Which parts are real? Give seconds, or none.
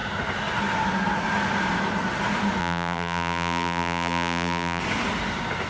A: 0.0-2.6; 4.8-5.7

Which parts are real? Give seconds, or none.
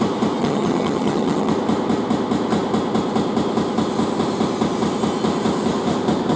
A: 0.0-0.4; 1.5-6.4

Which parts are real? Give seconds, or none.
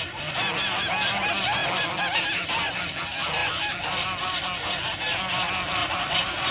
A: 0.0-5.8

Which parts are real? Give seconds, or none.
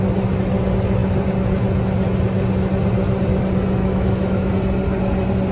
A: 0.0-3.8; 4.5-5.5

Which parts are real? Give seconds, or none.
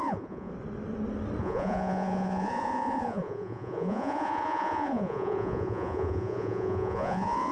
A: 0.5-1.4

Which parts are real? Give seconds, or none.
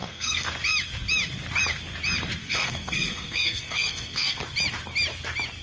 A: 0.5-2.4; 4.4-5.6